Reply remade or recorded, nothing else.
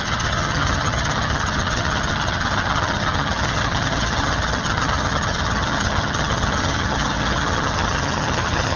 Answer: remade